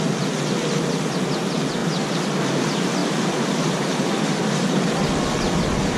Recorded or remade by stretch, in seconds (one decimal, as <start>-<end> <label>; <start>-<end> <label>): 0.0-6.0 recorded